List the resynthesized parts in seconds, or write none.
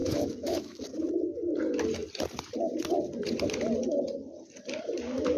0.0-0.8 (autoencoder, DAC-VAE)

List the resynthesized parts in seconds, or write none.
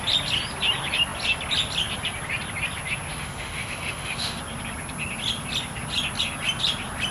3.1-4.4 (autoencoder, DAC-VAE)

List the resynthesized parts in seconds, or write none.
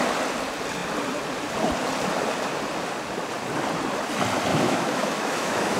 4.5-5.8 (autoencoder, DAC-VAE)